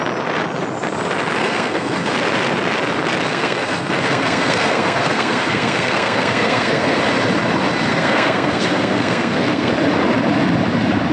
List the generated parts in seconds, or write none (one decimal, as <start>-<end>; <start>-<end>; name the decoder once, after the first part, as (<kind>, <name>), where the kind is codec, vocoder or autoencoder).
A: 1.4-2.1 (codec, SNAC); 3.3-7.0; 7.9-9.7